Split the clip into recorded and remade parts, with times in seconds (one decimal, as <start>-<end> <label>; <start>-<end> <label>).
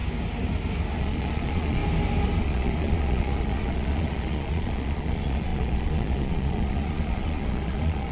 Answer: 0.0-1.0 recorded; 1.0-1.8 remade; 1.8-2.4 recorded; 2.4-8.1 remade